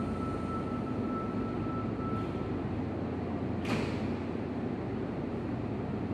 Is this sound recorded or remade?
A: recorded